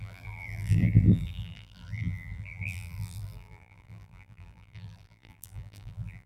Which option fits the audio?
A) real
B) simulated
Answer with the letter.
B